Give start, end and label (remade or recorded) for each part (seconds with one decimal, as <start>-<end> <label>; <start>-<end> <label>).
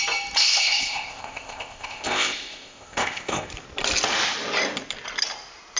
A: 0.0-0.4 recorded; 0.4-3.5 remade; 3.5-5.8 recorded